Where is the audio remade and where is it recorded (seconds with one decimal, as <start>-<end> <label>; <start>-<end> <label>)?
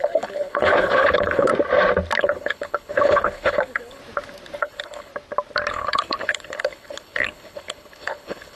0.0-1.5 remade; 1.5-2.2 recorded; 2.2-4.0 remade; 4.0-4.6 recorded; 4.6-5.1 remade; 5.1-5.7 recorded; 5.7-8.6 remade